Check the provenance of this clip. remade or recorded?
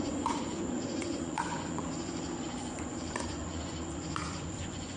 remade